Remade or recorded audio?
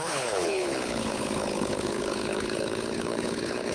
remade